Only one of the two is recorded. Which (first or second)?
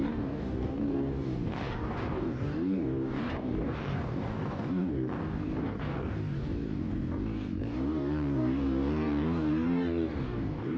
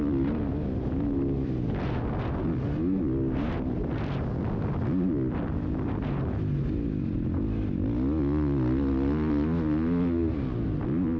second